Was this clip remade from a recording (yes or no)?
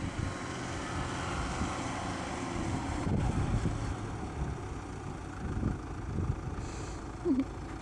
no